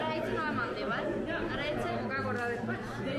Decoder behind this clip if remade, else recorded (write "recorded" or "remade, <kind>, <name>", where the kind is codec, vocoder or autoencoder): recorded